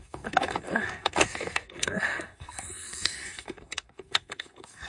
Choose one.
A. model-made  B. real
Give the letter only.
A